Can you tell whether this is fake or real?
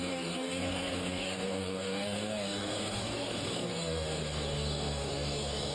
fake